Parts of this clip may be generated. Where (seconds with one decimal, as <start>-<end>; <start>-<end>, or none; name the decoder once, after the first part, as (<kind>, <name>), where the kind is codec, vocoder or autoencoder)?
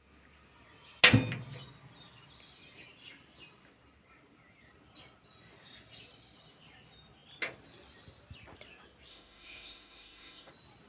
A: 9.1-10.5 (autoencoder, DAC-VAE)